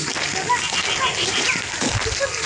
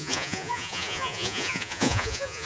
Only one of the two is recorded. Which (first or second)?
first